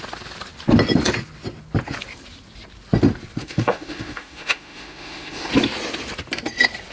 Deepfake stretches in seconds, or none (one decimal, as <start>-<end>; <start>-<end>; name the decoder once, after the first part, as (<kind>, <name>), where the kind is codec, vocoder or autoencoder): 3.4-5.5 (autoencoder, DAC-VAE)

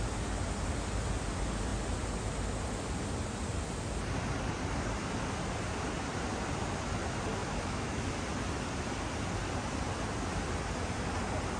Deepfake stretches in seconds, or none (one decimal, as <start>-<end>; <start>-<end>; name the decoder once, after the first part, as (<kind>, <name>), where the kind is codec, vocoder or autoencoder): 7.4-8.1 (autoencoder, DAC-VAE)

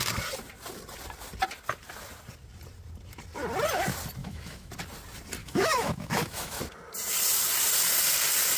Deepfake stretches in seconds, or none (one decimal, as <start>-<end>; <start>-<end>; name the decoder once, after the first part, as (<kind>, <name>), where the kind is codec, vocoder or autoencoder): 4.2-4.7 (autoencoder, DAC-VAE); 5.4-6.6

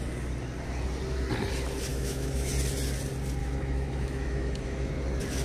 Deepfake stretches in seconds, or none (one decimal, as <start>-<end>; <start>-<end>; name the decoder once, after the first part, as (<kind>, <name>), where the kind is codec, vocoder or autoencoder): 1.9-2.5 (autoencoder, DAC-VAE); 3.4-4.9

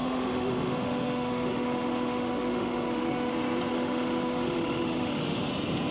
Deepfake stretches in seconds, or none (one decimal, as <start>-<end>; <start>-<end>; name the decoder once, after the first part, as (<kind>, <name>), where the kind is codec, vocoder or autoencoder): 0.0-3.3 (autoencoder, DAC-VAE); 3.7-5.5

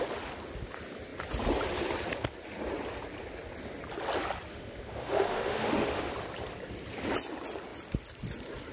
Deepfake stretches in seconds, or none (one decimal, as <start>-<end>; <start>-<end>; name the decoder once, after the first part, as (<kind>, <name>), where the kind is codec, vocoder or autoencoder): 4.5-6.1 (autoencoder, DAC-VAE)